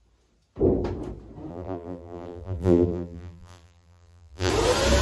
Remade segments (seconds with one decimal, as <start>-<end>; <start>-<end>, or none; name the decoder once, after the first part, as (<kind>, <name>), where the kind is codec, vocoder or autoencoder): 1.5-4.5 (vocoder, BigVGAN v2)